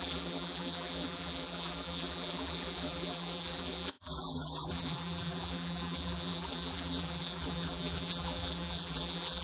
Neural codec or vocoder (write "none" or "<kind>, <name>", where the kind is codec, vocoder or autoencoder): vocoder, BigVGAN v2